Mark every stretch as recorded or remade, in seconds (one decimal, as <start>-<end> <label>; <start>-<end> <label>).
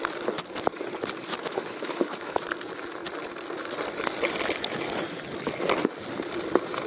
0.0-1.4 recorded; 1.4-2.4 remade; 2.4-6.9 recorded